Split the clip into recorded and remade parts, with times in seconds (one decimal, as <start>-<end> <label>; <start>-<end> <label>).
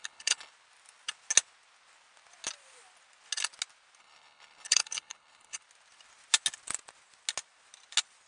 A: 0.0-0.5 remade; 0.5-4.0 recorded; 4.0-5.6 remade; 5.6-8.3 recorded